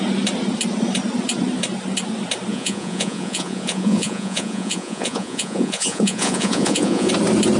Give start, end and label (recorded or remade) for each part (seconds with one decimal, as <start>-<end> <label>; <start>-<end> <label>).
0.0-2.5 recorded; 2.5-7.1 remade; 7.1-7.6 recorded